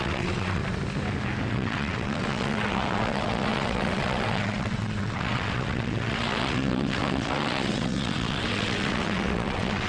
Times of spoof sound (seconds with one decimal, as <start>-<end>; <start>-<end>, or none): 0.0-0.6; 1.5-9.9